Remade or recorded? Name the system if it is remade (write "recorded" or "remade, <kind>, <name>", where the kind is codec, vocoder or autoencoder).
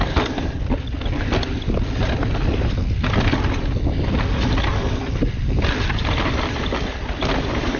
recorded